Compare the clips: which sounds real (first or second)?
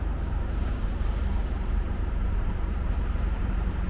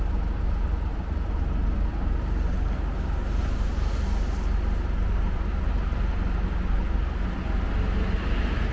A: second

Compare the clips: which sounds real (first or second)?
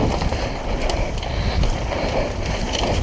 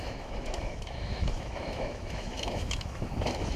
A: first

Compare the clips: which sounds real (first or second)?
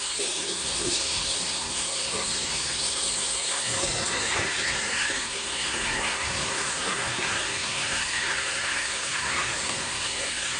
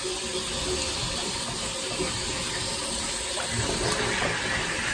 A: second